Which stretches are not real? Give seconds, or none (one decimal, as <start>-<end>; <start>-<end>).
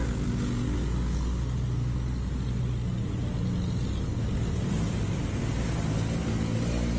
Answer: none